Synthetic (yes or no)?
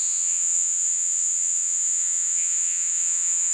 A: yes